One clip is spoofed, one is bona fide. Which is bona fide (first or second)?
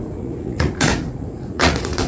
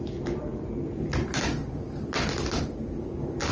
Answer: second